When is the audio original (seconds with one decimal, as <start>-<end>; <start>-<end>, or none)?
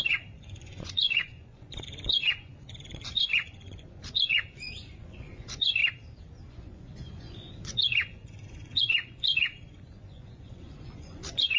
5.8-6.5